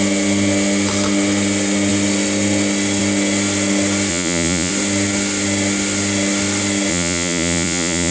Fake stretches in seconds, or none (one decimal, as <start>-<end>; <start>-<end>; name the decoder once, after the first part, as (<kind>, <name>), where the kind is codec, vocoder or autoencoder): 4.1-4.7 (vocoder, Vocos); 6.9-8.1